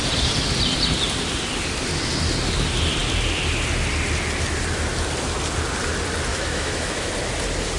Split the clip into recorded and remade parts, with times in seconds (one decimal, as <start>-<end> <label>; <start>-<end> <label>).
0.0-6.3 recorded; 6.3-7.1 remade; 7.1-7.8 recorded

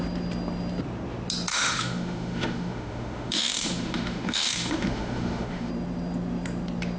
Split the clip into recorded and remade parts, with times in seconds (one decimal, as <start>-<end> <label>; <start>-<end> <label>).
0.0-1.5 recorded; 1.5-5.7 remade; 5.7-7.0 recorded

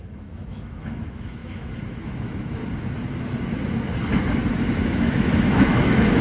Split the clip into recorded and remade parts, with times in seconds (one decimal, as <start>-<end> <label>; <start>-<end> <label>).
0.0-2.6 remade; 2.6-4.5 recorded; 4.5-6.2 remade

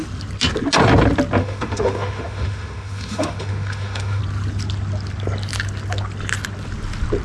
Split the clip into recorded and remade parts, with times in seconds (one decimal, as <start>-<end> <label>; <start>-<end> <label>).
0.0-1.4 recorded; 1.4-4.2 remade; 4.2-7.2 recorded

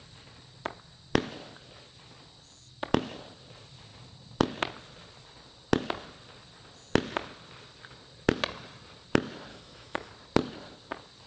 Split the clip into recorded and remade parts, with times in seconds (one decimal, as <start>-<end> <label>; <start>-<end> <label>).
0.0-9.5 recorded; 9.5-10.1 remade; 10.1-11.3 recorded

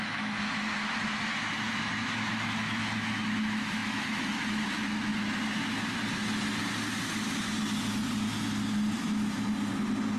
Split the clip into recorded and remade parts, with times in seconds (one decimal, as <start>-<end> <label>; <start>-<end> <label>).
0.0-1.3 remade; 1.3-2.3 recorded; 2.3-5.1 remade; 5.1-10.2 recorded

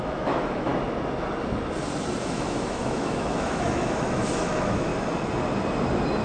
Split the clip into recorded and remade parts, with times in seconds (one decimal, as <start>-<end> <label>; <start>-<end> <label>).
0.0-0.7 remade; 0.7-2.2 recorded; 2.2-4.9 remade; 4.9-6.2 recorded

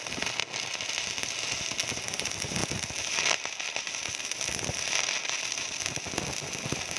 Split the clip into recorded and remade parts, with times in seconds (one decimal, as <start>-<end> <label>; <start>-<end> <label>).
0.0-7.0 recorded